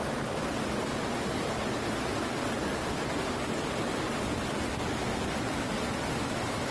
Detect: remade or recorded recorded